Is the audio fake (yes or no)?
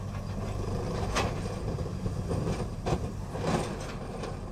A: yes